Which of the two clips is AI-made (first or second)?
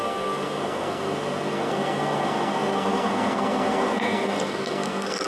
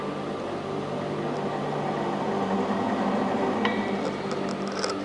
first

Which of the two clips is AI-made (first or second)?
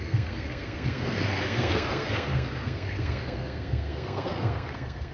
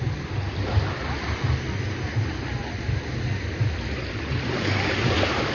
first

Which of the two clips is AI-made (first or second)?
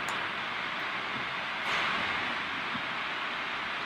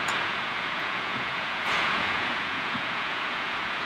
second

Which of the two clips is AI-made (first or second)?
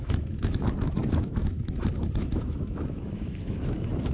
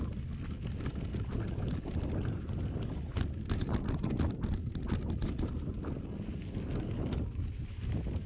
first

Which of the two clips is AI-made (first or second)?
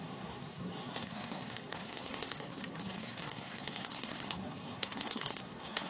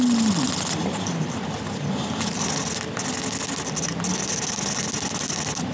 first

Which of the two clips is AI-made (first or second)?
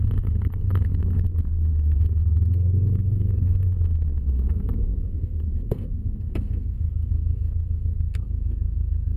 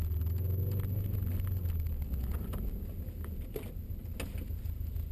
first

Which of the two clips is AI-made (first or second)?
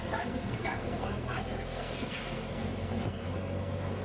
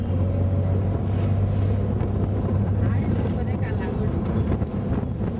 first